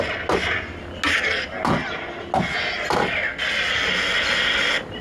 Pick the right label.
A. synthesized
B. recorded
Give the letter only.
B